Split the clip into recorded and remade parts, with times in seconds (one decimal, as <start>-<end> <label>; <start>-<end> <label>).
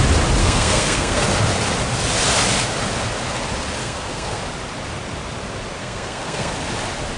0.0-0.4 recorded; 0.4-1.2 remade; 1.2-3.8 recorded; 3.8-4.4 remade; 4.4-5.8 recorded; 5.8-6.5 remade; 6.5-7.2 recorded